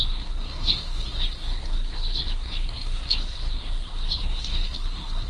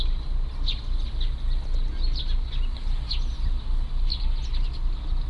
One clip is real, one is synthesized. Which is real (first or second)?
second